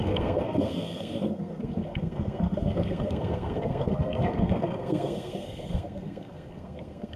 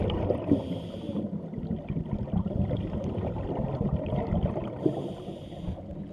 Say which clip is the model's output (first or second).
first